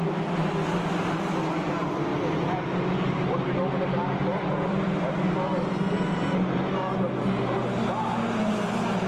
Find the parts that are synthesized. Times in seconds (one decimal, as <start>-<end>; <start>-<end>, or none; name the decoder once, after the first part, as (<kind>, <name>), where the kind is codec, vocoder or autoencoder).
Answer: 6.1-6.7 (vocoder, BigVGAN v2)